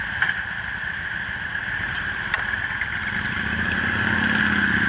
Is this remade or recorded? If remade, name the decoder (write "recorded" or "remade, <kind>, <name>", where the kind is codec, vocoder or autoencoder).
recorded